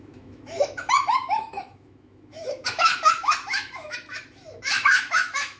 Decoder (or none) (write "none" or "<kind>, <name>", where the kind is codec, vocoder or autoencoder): autoencoder, DAC-VAE